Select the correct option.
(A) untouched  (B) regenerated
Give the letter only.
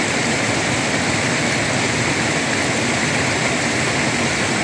A